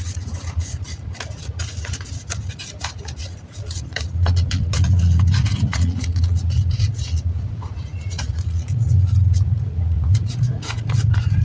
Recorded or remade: remade